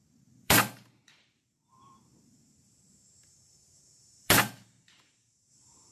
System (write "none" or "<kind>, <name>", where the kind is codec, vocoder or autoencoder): vocoder, BigVGAN v2